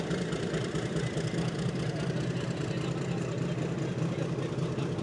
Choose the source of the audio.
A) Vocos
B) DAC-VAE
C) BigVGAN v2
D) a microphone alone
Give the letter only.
C